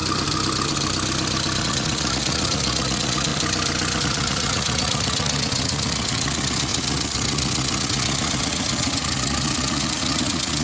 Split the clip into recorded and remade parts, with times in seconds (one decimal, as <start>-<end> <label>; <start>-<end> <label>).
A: 0.0-1.6 recorded; 1.6-3.3 remade; 3.3-4.0 recorded; 4.0-10.6 remade